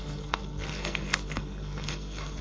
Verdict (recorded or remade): remade